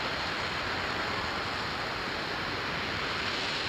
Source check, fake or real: real